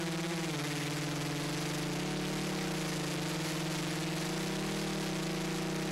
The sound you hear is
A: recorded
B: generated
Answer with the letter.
A